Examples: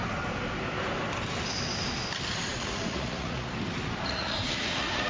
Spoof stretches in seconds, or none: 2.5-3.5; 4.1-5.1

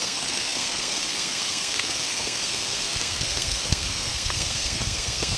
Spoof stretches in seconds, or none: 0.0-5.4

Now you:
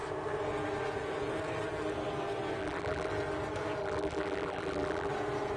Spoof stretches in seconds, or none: 2.6-3.1; 3.8-5.1

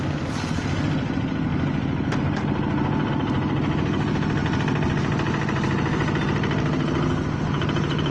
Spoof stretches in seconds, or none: none

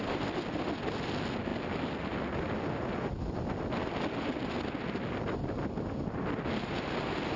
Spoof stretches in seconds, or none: none

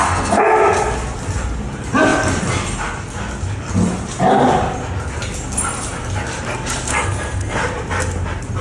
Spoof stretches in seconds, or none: 0.0-0.6; 6.9-7.6